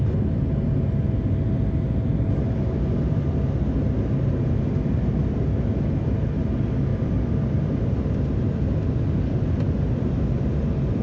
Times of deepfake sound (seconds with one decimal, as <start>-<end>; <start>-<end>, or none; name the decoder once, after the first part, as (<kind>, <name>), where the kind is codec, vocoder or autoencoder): 6.9-7.6 (vocoder, BigVGAN v2)